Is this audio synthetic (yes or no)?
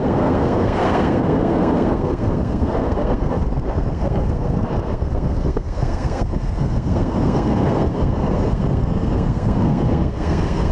yes